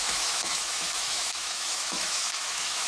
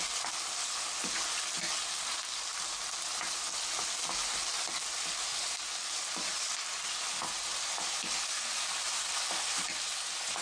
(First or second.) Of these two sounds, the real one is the second